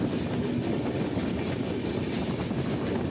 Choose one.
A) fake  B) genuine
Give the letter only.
B